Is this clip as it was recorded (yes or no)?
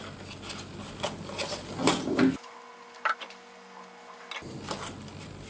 yes